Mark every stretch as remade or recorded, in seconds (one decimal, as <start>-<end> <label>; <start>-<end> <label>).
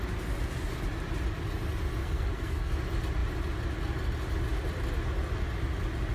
0.0-2.0 recorded; 2.0-2.7 remade; 2.7-6.1 recorded